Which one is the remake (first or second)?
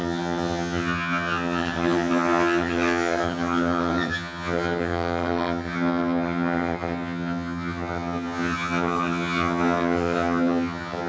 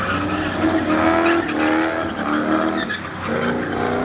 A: first